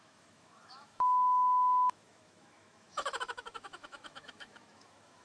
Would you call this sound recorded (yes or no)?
no